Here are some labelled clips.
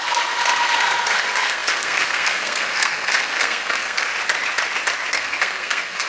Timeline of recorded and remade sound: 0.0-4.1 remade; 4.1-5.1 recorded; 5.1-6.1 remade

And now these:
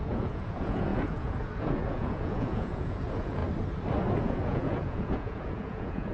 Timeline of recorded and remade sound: 0.0-3.4 remade; 3.4-4.1 recorded; 4.1-6.1 remade

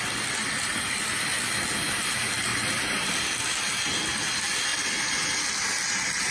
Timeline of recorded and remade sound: 0.0-6.3 recorded